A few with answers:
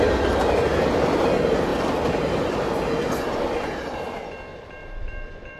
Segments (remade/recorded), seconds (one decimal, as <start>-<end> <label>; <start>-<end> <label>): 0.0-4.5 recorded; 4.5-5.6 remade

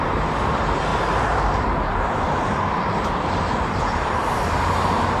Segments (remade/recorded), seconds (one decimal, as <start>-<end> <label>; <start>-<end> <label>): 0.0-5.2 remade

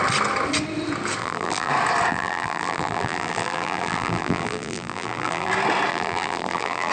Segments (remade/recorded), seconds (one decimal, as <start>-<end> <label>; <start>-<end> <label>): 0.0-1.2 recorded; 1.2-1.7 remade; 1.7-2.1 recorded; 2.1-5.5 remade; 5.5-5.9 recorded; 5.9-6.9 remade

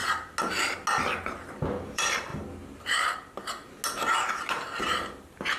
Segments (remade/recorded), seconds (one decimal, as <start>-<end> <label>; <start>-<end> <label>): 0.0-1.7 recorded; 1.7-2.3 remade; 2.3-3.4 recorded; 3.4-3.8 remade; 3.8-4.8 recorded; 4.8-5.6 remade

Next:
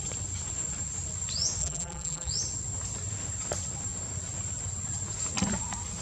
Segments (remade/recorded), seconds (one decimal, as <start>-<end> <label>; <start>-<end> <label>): 0.0-1.6 recorded; 1.6-2.3 remade; 2.3-6.0 recorded